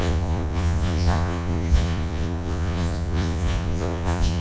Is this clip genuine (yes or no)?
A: no